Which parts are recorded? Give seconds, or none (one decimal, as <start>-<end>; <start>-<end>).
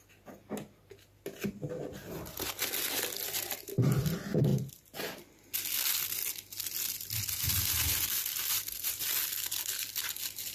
0.0-10.5